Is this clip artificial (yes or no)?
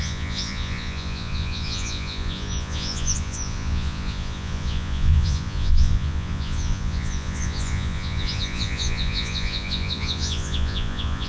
yes